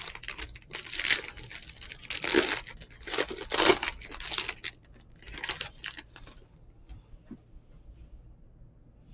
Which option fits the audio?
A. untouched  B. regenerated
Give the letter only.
A